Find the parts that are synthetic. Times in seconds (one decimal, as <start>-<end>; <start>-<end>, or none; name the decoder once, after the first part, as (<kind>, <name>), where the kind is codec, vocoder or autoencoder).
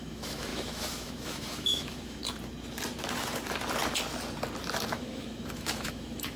0.0-2.2 (autoencoder, DAC-VAE); 4.9-6.4